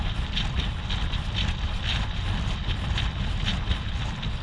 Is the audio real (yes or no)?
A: yes